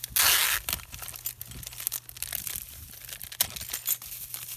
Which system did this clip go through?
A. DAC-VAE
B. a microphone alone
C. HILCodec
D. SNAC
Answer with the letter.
B